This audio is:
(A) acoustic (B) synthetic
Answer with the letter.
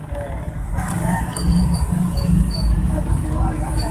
B